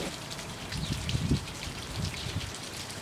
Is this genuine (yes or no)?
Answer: no